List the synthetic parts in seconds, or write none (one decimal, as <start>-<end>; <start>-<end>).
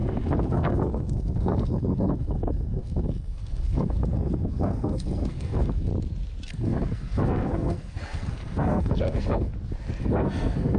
0.0-5.9; 6.5-9.5; 10.0-10.8